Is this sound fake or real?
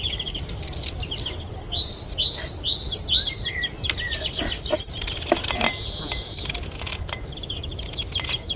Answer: fake